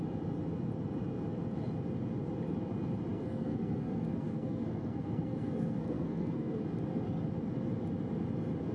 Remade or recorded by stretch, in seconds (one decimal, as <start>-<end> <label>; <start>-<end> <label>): 0.0-3.1 recorded; 3.1-6.6 remade; 6.6-8.7 recorded